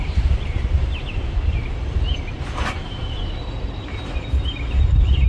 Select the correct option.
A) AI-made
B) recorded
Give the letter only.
A